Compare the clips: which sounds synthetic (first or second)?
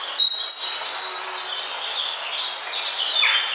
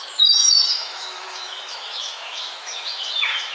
second